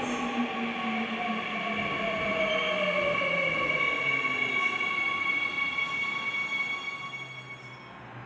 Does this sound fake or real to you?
real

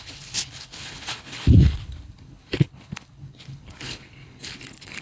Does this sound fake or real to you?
fake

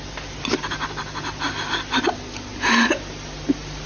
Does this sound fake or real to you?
real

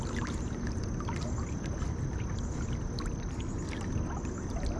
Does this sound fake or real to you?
real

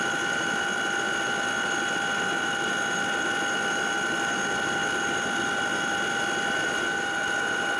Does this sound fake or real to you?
real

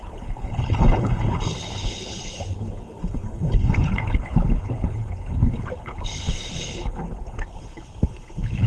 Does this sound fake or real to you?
fake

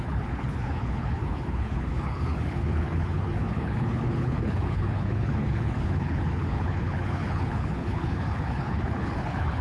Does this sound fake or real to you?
fake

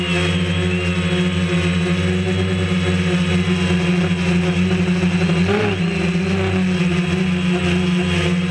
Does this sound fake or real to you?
real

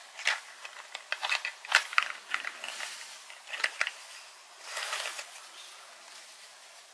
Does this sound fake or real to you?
real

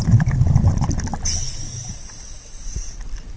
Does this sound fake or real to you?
real